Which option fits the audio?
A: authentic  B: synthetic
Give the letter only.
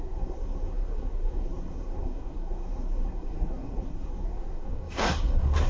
B